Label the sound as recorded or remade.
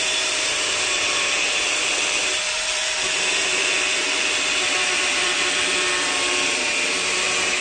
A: remade